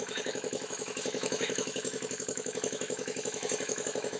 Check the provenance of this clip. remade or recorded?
remade